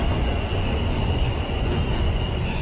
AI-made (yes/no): yes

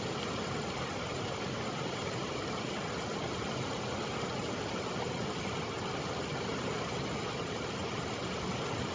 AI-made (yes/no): no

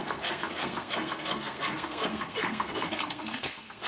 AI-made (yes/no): yes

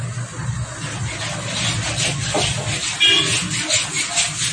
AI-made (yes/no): no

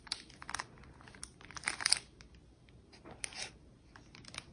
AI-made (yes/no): yes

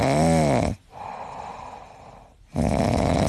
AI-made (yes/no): no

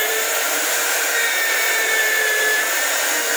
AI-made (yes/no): yes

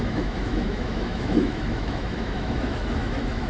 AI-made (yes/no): yes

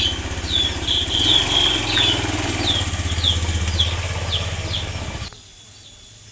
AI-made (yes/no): no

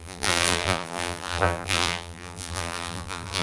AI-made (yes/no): yes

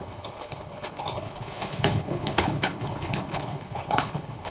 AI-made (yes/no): yes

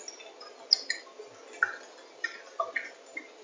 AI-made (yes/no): no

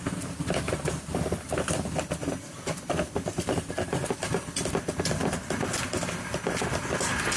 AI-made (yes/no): yes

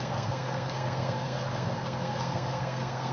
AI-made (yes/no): yes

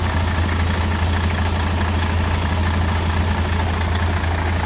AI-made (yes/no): no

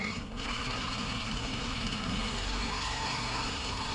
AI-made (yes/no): yes